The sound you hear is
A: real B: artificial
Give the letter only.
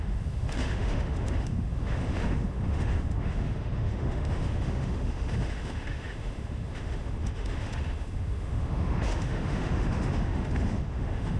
B